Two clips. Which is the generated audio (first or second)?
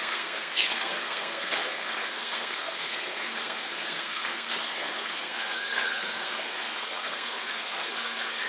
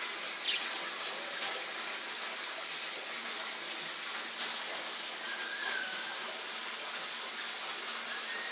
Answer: first